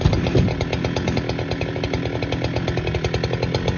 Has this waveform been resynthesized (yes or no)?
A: no